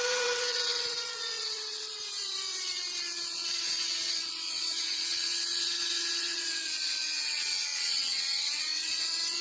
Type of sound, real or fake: fake